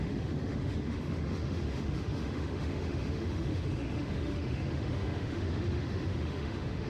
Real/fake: fake